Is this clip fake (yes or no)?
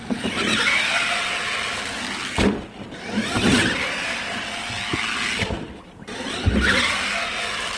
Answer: no